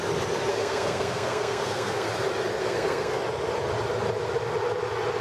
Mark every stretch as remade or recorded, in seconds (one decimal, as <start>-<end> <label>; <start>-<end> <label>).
0.0-0.5 recorded; 0.5-2.1 remade; 2.1-2.6 recorded; 2.6-3.2 remade; 3.2-5.2 recorded